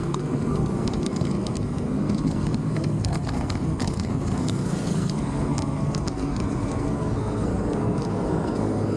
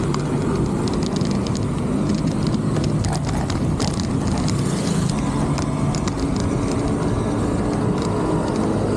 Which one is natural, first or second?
second